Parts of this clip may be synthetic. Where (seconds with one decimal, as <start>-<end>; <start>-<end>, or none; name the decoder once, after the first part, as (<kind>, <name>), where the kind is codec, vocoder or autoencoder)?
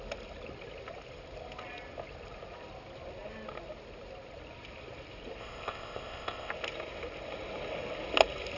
5.4-6.5 (codec, ZipCodec)